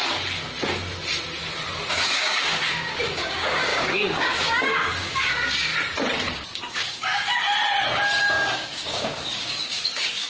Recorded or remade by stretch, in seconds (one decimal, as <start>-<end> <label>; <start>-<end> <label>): 0.0-1.9 recorded; 1.9-5.7 remade; 5.7-6.6 recorded; 6.6-7.2 remade; 7.2-8.2 recorded; 8.2-10.3 remade